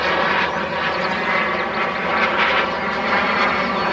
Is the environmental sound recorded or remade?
recorded